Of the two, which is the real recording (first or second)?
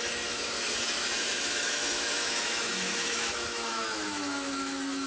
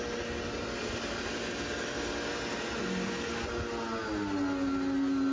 second